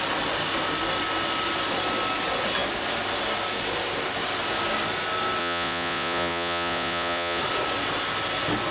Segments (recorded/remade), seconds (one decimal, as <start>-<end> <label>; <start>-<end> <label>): 0.0-5.4 recorded; 5.4-7.4 remade; 7.4-8.7 recorded